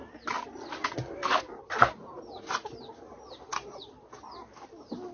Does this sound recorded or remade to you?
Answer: recorded